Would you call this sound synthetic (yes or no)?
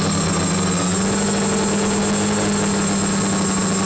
no